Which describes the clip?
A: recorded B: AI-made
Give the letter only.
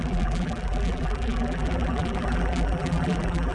B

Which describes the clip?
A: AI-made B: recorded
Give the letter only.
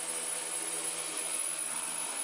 A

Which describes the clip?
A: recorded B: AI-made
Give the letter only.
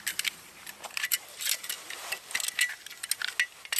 A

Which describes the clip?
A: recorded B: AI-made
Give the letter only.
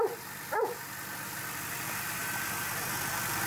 B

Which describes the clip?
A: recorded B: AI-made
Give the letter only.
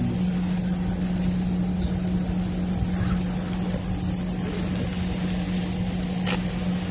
A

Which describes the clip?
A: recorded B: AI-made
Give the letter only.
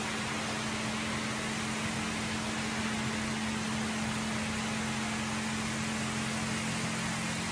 A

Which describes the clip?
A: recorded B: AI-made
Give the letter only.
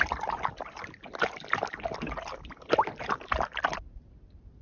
A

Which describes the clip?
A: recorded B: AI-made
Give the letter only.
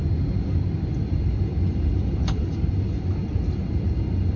B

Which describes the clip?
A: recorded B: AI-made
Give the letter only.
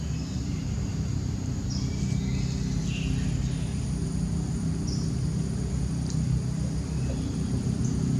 A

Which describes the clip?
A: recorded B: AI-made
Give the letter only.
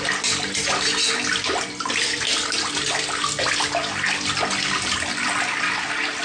A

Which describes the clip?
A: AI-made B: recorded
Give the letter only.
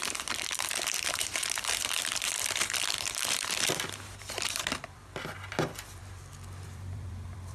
A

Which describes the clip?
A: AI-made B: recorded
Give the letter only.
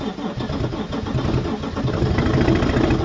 A